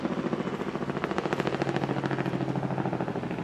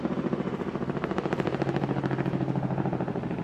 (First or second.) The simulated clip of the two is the second